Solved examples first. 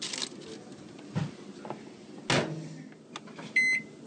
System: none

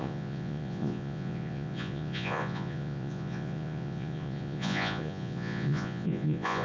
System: vocoder, Vocos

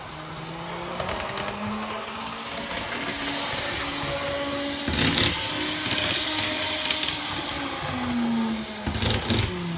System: none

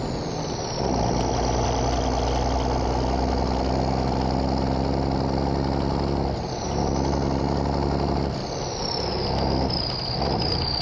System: none